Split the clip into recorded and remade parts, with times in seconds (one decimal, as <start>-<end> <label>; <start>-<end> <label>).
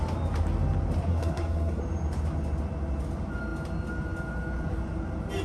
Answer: 0.0-1.1 recorded; 1.1-1.8 remade; 1.8-5.4 recorded